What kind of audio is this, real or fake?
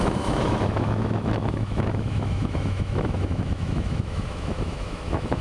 fake